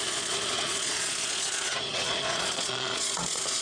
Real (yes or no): no